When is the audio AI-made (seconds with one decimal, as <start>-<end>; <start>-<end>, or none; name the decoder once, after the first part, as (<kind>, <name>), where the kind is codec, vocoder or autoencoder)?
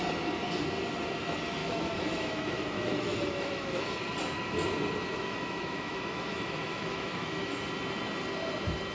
1.6-3.8 (autoencoder, DAC-VAE); 5.1-7.6